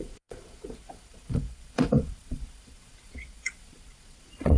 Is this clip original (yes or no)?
no